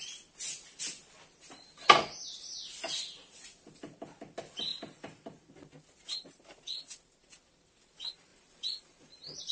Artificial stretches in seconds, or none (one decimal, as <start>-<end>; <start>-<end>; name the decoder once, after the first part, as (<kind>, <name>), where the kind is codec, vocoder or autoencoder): 4.7-5.5 (vocoder, BigVGAN v2); 8.3-9.5